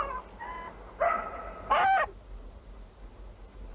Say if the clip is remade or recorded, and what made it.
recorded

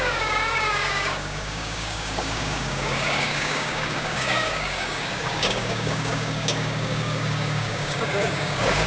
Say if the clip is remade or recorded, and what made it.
remade, codec, DAC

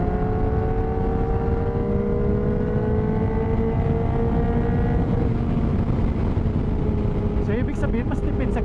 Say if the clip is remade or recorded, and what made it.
recorded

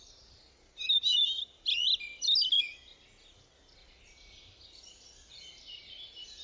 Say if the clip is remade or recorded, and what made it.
recorded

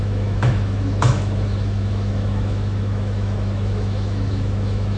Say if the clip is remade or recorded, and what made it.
remade, autoencoder, DAC-VAE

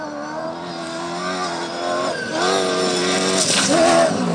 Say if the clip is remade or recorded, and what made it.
recorded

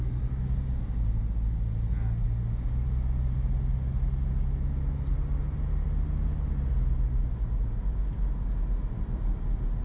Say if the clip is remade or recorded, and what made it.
recorded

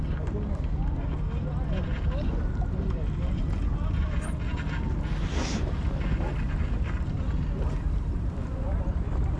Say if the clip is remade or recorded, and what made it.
recorded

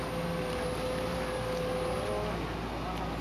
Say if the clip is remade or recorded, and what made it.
recorded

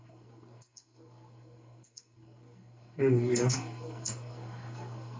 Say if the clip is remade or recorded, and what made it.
remade, codec, SNAC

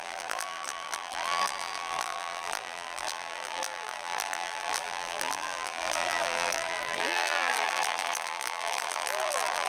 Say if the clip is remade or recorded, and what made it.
remade, vocoder, BigVGAN v2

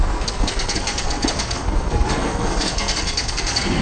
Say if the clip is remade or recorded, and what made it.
remade, codec, SNAC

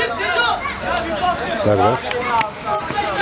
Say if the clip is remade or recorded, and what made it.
recorded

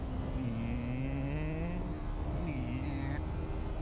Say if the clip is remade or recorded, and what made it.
recorded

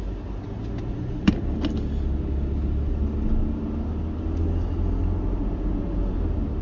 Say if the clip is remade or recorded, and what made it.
recorded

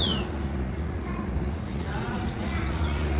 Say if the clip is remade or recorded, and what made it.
remade, vocoder, Vocos